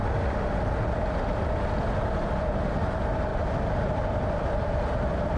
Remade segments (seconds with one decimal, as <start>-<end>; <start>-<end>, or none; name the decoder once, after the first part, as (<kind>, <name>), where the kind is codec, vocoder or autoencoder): 0.0-0.5 (vocoder, BigVGAN v2); 3.3-5.4